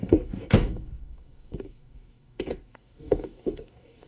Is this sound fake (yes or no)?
yes